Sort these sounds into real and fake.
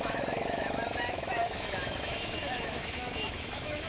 fake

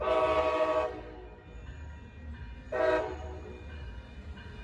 real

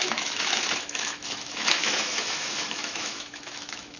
fake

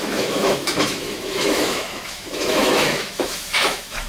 fake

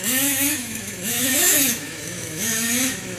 fake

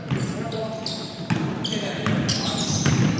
real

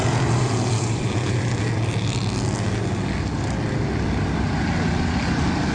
real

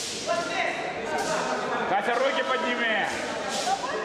real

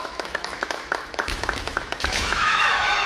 fake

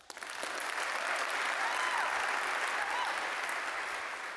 real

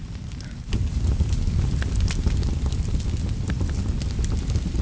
real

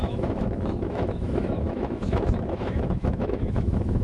fake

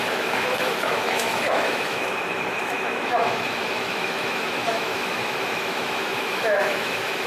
fake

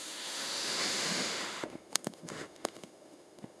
fake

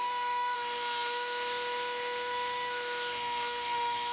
fake